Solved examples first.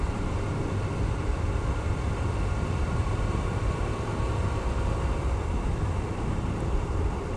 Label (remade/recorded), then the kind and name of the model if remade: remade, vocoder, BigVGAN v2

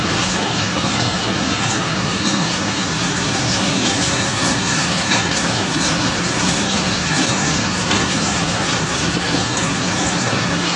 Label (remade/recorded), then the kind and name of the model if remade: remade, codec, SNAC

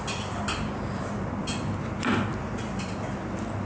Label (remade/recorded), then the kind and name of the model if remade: recorded